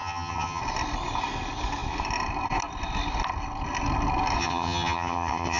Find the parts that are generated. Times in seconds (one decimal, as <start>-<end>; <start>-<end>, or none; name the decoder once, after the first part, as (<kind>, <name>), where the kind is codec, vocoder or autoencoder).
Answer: 0.0-0.6 (vocoder, HiFi-GAN); 4.4-5.6